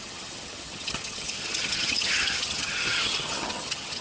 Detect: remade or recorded remade